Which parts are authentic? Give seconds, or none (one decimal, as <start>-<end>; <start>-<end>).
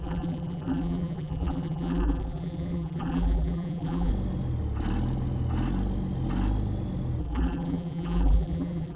4.1-7.2